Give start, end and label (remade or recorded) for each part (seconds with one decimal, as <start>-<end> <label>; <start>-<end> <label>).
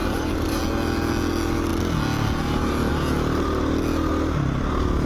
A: 0.0-0.6 remade; 0.6-5.1 recorded